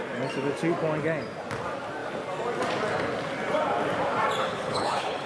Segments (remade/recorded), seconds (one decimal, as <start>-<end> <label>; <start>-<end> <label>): 0.0-4.4 recorded; 4.4-5.3 remade